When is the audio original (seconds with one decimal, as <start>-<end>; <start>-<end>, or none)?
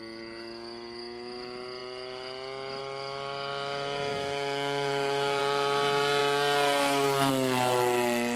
0.0-4.1; 5.4-8.4